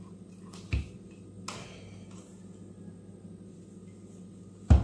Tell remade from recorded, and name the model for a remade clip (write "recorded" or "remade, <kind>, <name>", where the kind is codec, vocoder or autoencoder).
recorded